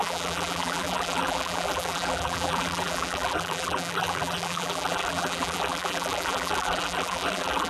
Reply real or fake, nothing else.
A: fake